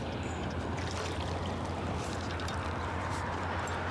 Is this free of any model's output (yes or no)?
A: yes